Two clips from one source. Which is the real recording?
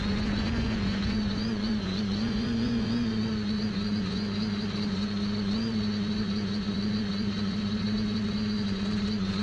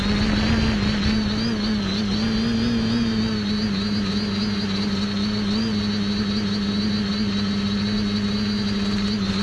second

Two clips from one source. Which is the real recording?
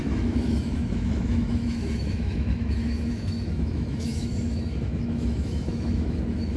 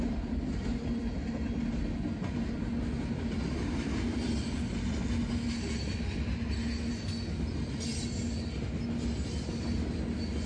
second